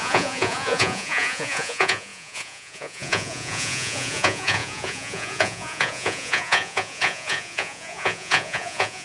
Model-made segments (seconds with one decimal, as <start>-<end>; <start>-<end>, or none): 0.0-9.0